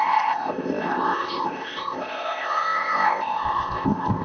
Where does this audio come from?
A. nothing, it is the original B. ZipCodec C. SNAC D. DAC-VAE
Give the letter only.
B